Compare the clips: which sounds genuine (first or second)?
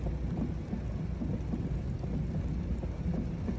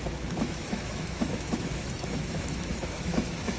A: first